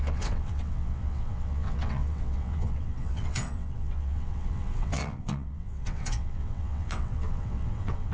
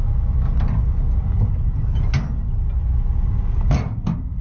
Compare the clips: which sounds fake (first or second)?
first